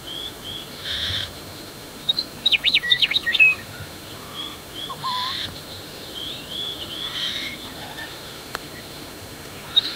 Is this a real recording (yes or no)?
no